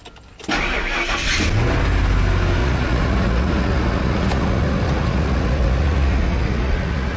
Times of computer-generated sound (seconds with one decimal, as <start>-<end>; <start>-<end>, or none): 2.6-7.2